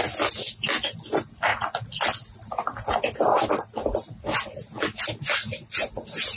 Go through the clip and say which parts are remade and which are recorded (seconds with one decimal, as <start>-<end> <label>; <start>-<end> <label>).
0.0-1.5 recorded; 1.5-5.3 remade; 5.3-6.4 recorded

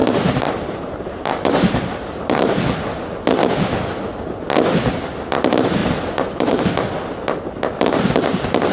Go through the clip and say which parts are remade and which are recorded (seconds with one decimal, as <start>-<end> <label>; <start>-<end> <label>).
0.0-2.6 remade; 2.6-5.8 recorded; 5.8-6.6 remade; 6.6-8.7 recorded